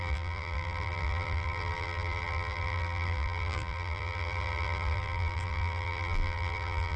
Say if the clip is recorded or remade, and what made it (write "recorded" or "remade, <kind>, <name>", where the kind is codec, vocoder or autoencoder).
remade, vocoder, BigVGAN v2